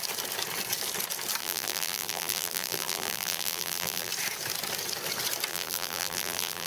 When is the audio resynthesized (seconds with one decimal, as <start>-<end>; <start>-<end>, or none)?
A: 1.4-4.1; 5.5-6.7